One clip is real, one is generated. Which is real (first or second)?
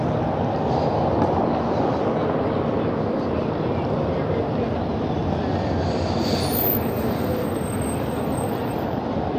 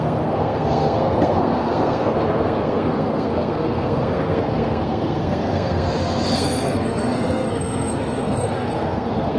first